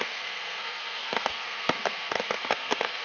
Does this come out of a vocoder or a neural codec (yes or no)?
yes